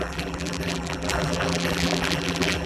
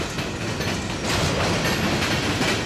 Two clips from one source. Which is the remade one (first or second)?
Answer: first